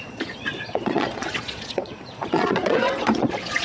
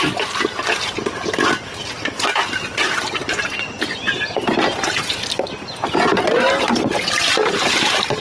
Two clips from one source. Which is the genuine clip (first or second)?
second